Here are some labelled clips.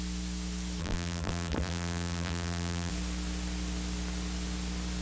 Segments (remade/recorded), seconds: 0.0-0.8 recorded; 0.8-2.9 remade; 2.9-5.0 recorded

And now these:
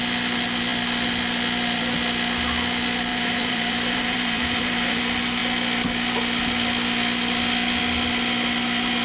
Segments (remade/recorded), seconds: 0.0-3.1 recorded; 3.1-5.0 remade; 5.0-9.0 recorded

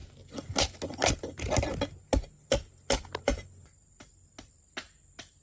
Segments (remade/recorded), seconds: 0.0-3.2 recorded; 3.2-5.4 remade

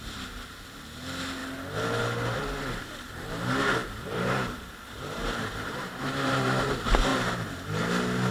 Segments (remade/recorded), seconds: 0.0-3.8 recorded; 3.8-6.6 remade; 6.6-7.1 recorded; 7.1-7.8 remade; 7.8-8.3 recorded

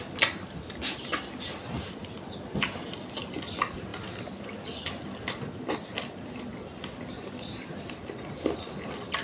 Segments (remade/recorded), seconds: 0.0-9.2 recorded

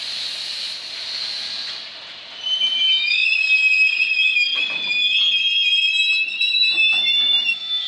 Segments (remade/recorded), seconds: 0.0-6.0 recorded; 6.0-7.9 remade